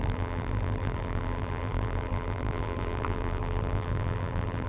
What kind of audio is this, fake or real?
fake